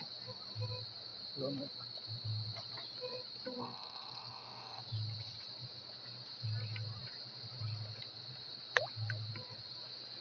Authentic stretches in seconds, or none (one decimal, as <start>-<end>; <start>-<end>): 0.0-3.6; 4.8-10.2